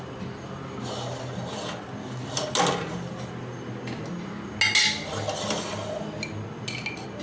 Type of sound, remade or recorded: recorded